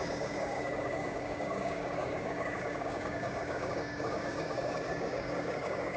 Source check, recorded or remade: remade